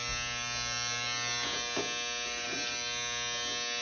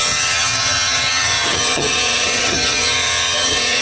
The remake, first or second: second